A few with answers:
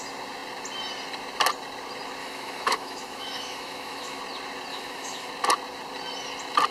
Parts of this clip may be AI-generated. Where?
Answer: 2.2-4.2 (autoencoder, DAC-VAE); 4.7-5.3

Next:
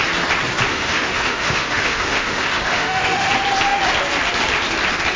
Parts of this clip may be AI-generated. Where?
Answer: 0.7-3.3 (autoencoder, DAC-VAE)